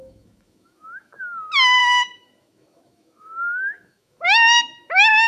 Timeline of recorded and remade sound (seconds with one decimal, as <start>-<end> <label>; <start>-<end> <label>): 0.0-5.3 remade